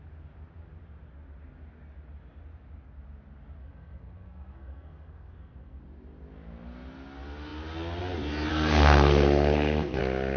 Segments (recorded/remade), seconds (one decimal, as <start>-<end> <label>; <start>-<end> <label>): 0.0-3.6 recorded; 3.6-5.8 remade; 5.8-8.5 recorded; 8.5-10.0 remade; 10.0-10.4 recorded